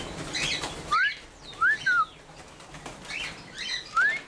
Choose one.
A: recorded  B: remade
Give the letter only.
A